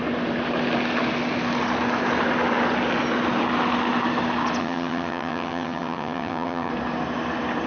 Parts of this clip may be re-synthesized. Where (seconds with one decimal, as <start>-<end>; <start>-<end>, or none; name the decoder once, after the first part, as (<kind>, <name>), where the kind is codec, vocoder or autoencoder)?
4.6-6.7 (vocoder, HiFi-GAN)